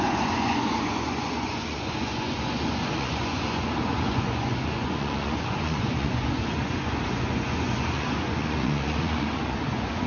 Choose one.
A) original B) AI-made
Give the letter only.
B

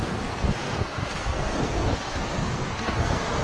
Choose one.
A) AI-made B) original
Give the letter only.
A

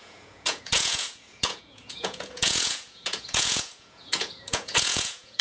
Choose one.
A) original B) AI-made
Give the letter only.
B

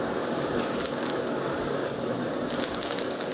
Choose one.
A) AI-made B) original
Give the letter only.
A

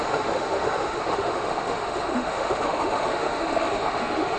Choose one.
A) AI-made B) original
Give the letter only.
A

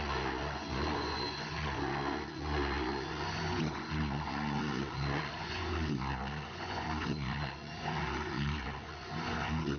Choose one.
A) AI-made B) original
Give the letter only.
A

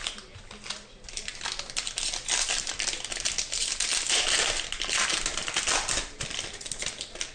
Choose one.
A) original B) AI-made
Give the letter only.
A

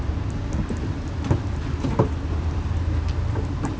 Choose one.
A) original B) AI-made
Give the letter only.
A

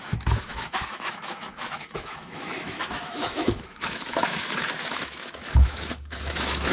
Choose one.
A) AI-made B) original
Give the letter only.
A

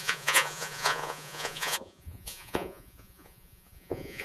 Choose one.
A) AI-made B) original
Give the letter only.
A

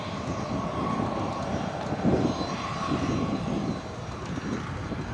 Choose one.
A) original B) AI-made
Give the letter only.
A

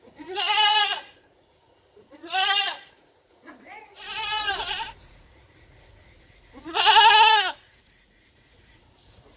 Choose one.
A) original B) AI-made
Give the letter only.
B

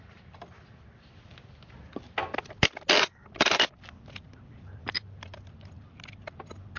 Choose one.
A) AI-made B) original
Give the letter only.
B